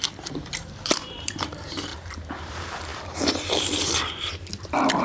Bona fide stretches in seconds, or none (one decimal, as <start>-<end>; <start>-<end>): none